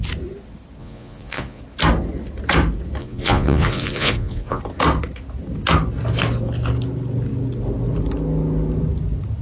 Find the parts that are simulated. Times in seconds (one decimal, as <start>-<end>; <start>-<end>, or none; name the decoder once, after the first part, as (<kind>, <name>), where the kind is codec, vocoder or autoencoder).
0.8-1.6 (vocoder, Vocos); 3.0-4.6